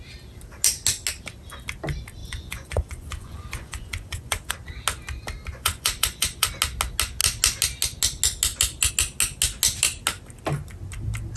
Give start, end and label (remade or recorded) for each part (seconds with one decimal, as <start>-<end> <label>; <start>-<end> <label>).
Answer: 0.0-2.2 recorded; 2.2-4.5 remade; 4.5-5.5 recorded; 5.5-6.5 remade; 6.5-11.4 recorded